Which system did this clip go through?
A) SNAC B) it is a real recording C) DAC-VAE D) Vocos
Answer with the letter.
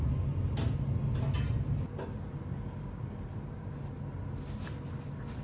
B